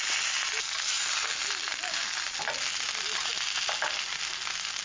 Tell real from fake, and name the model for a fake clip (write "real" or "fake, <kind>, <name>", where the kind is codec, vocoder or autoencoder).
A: real